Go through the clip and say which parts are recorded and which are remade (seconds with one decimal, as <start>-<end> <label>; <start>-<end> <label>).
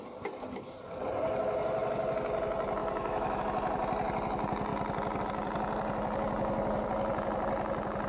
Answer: 0.0-2.8 recorded; 2.8-3.4 remade; 3.4-8.1 recorded